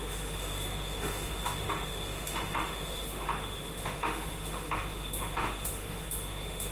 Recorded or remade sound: remade